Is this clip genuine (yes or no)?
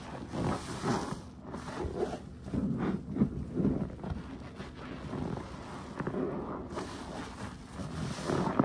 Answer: yes